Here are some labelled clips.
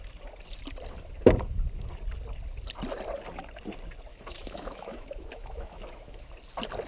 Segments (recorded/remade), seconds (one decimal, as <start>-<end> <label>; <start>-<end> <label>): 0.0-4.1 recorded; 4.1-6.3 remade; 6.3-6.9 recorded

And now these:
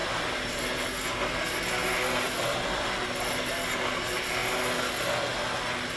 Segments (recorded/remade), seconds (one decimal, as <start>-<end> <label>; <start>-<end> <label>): 0.0-0.6 remade; 0.6-6.0 recorded

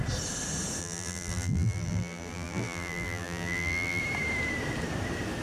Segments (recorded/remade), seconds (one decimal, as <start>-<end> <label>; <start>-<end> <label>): 0.0-0.8 recorded; 0.8-4.0 remade; 4.0-5.4 recorded

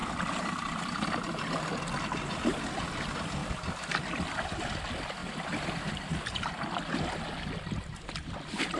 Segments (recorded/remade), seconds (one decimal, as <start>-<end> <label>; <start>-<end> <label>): 0.0-2.0 remade; 2.0-5.2 recorded; 5.2-7.0 remade; 7.0-8.8 recorded

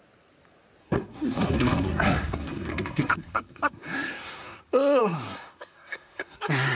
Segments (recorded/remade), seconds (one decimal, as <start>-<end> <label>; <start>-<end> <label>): 0.0-0.8 recorded; 0.8-4.6 remade; 4.6-5.0 recorded; 5.0-6.8 remade